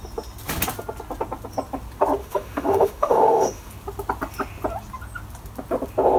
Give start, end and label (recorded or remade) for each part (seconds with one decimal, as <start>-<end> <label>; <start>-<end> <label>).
0.0-2.2 recorded; 2.2-3.7 remade; 3.7-6.2 recorded